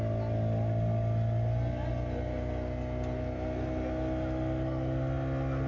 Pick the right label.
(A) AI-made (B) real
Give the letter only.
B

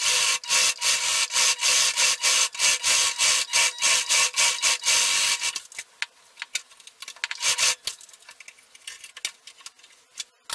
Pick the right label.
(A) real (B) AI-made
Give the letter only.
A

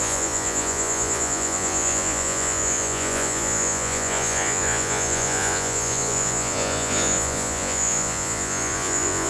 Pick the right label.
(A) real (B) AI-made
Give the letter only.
B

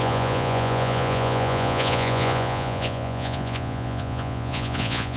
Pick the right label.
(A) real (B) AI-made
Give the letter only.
B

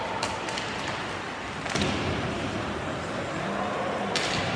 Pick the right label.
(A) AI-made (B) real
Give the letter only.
B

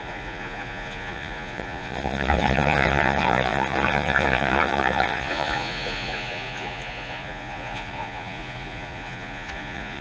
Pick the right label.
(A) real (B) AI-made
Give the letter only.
B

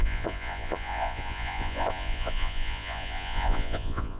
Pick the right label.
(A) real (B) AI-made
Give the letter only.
B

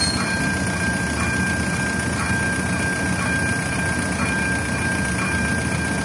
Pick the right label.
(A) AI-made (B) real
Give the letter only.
B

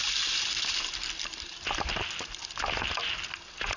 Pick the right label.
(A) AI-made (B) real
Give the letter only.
B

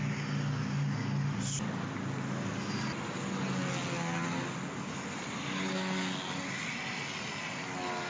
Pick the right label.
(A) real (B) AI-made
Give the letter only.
A